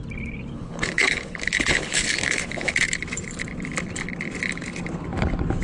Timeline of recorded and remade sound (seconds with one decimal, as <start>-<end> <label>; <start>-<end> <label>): 0.0-0.5 recorded; 0.5-2.7 remade; 2.7-5.6 recorded